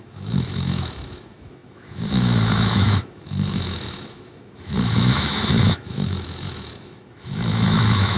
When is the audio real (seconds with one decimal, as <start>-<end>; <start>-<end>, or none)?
none